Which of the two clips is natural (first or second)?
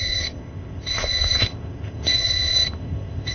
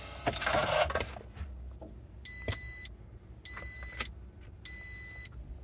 second